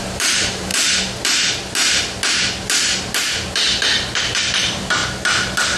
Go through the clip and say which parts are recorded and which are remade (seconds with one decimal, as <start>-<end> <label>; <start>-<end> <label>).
0.0-0.7 remade; 0.7-4.2 recorded; 4.2-5.0 remade; 5.0-5.8 recorded